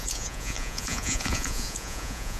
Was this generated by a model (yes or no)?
yes